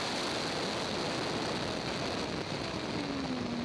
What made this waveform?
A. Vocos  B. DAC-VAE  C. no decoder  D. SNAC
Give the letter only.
C